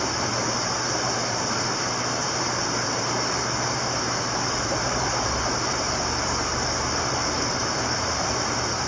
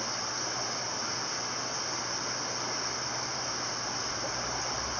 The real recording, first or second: second